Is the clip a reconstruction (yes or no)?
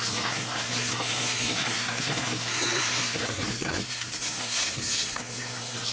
yes